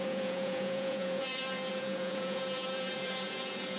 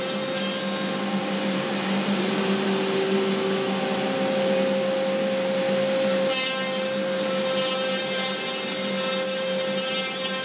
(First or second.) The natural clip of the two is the second